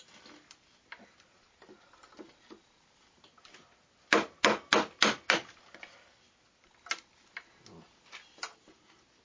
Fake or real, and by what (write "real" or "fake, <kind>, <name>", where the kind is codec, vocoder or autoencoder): real